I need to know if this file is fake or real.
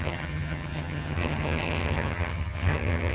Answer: fake